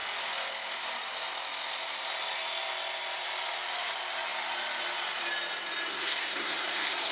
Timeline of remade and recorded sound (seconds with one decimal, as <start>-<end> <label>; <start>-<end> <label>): 0.0-5.9 recorded; 5.9-7.1 remade